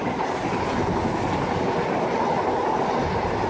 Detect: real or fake real